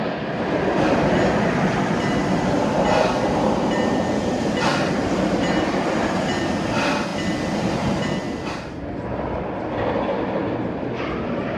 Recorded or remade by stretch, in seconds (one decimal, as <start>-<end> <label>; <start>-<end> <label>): 0.0-11.6 recorded